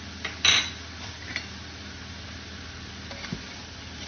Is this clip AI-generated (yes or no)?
no